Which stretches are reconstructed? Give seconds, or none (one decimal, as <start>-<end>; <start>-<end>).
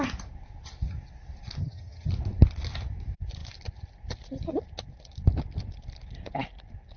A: 1.6-2.1